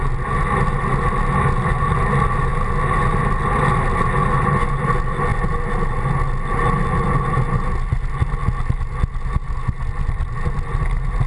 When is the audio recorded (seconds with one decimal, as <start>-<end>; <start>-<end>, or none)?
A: 0.0-11.3